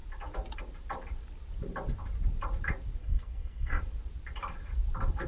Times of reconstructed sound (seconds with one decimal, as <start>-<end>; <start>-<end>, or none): 3.0-3.8